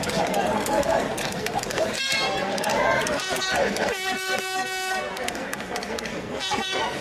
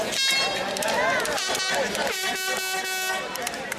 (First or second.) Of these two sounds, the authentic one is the second